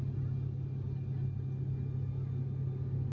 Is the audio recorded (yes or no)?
yes